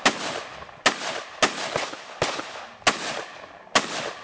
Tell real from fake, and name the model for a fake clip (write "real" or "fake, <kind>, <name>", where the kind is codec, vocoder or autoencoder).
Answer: real